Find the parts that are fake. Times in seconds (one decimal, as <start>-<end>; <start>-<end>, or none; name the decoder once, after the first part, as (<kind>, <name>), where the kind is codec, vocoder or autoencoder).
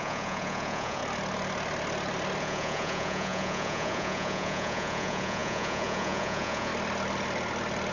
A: 0.0-1.0 (vocoder, Vocos); 2.4-6.7